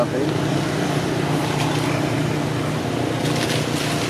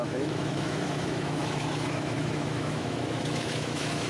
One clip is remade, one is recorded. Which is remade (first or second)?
second